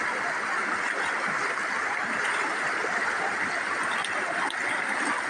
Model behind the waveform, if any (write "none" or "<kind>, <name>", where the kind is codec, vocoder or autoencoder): none